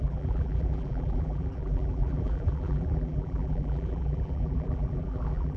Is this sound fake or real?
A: fake